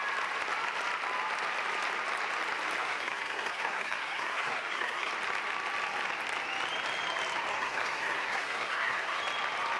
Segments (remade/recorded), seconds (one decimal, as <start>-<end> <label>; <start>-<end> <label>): 0.0-2.8 recorded; 2.8-5.1 remade; 5.1-7.5 recorded; 7.5-9.2 remade; 9.2-9.8 recorded